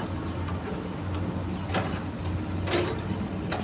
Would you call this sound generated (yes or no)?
no